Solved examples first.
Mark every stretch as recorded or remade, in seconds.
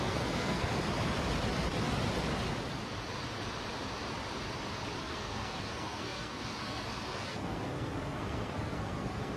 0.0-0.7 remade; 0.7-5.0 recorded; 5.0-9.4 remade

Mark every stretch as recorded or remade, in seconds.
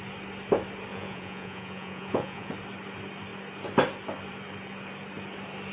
0.0-0.9 recorded; 0.9-2.5 remade; 2.5-5.7 recorded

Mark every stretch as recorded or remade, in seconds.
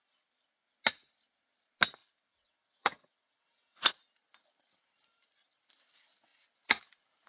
0.0-2.0 recorded; 2.0-3.9 remade; 3.9-7.3 recorded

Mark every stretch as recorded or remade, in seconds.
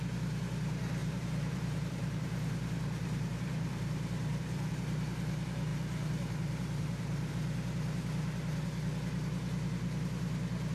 0.0-1.0 recorded; 1.0-4.7 remade; 4.7-5.7 recorded; 5.7-7.3 remade; 7.3-10.7 recorded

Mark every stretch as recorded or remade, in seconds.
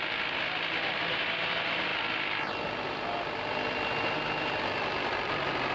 0.0-5.7 recorded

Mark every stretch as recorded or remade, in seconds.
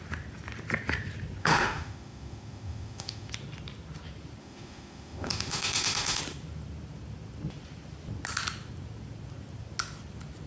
0.0-1.4 recorded; 1.4-3.3 remade; 3.3-4.4 recorded; 4.4-6.2 remade; 6.2-10.5 recorded